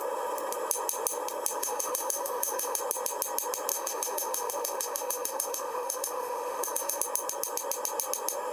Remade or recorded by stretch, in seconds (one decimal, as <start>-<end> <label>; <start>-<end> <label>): 0.0-1.6 recorded; 1.6-2.8 remade; 2.8-3.7 recorded; 3.7-7.0 remade; 7.0-8.5 recorded